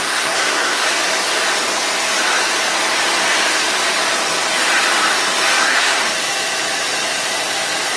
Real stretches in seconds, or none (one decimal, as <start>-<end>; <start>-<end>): 0.8-5.6; 6.0-8.0